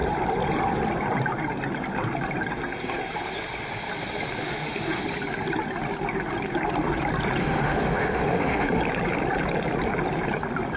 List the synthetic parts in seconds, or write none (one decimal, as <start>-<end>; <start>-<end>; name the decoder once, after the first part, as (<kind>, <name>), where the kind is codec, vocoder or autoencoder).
4.4-5.0 (autoencoder, DAC-VAE); 7.4-8.8